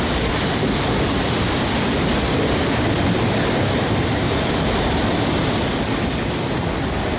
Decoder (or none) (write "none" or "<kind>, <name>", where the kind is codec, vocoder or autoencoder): none